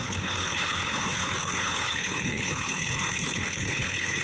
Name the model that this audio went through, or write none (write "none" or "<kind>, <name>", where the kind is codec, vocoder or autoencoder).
codec, HILCodec